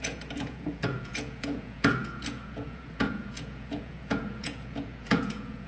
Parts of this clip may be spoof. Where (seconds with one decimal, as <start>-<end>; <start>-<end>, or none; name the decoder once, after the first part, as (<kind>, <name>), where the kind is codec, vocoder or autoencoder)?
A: 0.0-5.7 (vocoder, Vocos)